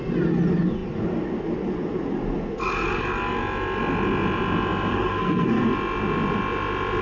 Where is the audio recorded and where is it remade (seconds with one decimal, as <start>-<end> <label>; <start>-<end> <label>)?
0.0-4.9 recorded; 4.9-5.6 remade; 5.6-7.0 recorded